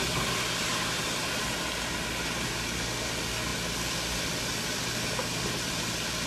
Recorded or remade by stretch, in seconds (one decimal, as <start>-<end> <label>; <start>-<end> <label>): 0.0-6.3 recorded